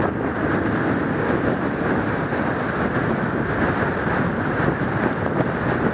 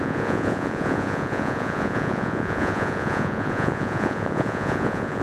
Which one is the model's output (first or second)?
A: second